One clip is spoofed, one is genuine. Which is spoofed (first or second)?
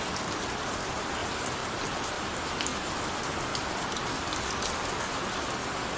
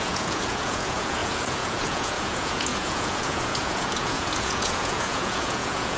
second